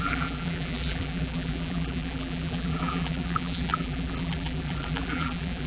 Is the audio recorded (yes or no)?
no